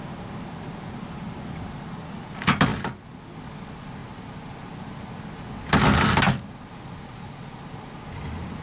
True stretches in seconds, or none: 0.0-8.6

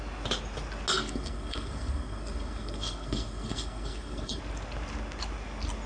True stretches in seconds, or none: 0.0-0.9; 4.4-5.9

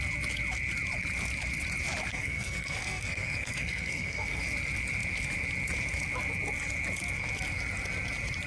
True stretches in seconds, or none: 0.0-2.1; 4.4-8.5